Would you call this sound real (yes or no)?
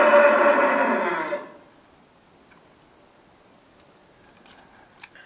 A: yes